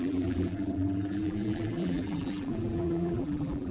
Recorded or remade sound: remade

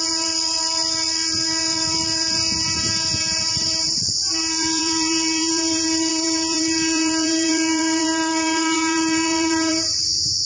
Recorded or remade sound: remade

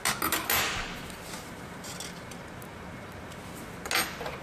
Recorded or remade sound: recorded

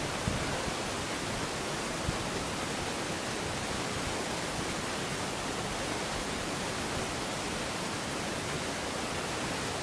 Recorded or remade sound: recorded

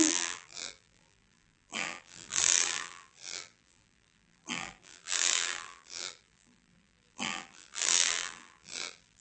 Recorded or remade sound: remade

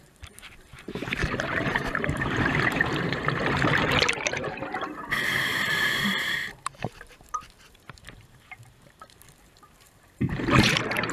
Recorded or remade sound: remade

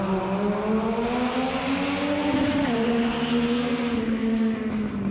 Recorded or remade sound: recorded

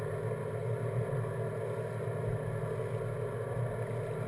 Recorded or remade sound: recorded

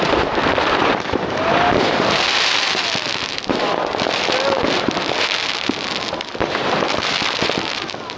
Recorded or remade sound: remade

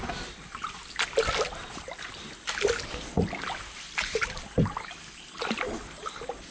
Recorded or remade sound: recorded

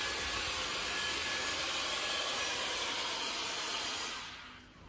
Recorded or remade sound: recorded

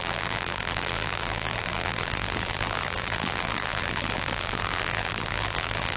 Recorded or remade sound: remade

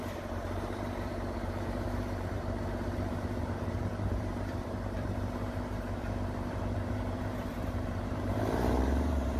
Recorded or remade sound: remade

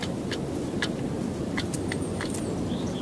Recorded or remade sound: recorded